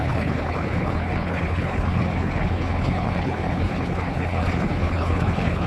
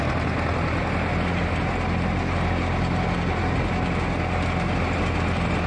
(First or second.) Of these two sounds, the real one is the second